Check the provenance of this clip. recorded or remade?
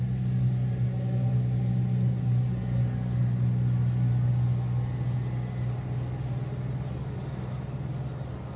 recorded